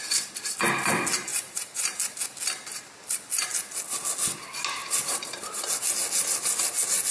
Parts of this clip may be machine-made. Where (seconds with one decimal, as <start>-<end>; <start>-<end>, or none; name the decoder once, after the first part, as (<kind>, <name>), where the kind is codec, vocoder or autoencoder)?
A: 1.3-2.2 (vocoder, BigVGAN v2); 4.8-5.7